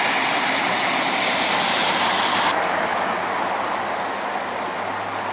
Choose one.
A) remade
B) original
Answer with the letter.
B